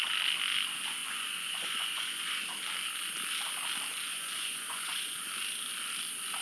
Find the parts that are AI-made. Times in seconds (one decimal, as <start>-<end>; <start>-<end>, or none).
1.0-2.4; 4.1-5.3